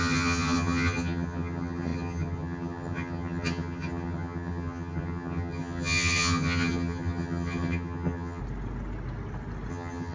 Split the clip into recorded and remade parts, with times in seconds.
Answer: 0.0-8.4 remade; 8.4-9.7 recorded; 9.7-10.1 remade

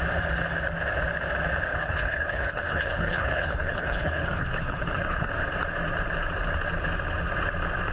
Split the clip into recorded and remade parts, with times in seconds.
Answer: 0.0-1.7 recorded; 1.7-5.3 remade; 5.3-7.9 recorded

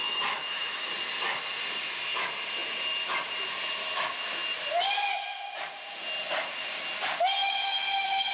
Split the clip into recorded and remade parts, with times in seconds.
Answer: 0.0-0.9 remade; 0.9-7.4 recorded; 7.4-8.3 remade

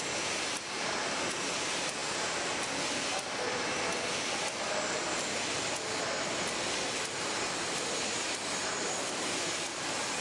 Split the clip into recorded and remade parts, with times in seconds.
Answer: 0.0-10.2 recorded

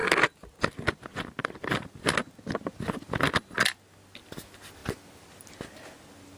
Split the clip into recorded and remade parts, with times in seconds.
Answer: 0.0-6.4 recorded